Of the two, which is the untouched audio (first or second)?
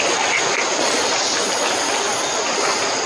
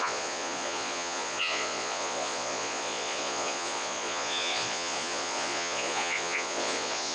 first